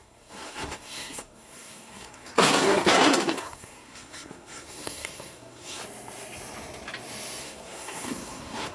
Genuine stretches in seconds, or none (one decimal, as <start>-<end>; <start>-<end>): 5.8-7.4